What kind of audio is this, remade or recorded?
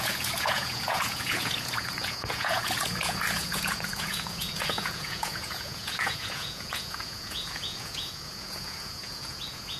remade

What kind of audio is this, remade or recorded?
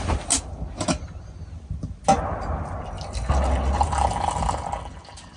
recorded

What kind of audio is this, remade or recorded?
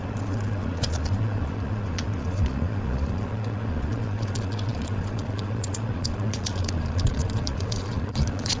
remade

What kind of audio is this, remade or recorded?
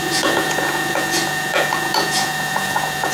remade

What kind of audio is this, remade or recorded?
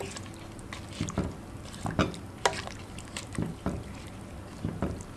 recorded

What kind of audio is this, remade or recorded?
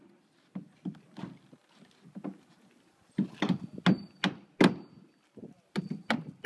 recorded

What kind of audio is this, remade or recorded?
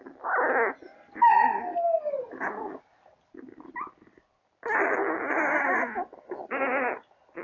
recorded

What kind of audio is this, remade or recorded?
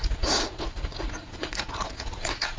remade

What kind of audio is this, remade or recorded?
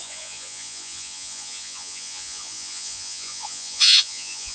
remade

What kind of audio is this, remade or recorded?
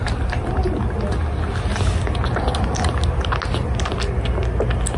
recorded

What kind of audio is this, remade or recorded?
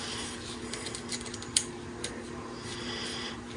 recorded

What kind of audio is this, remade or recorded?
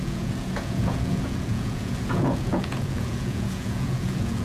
remade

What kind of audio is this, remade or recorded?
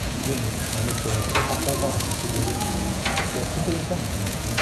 remade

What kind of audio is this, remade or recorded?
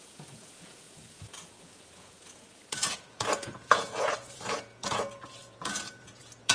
remade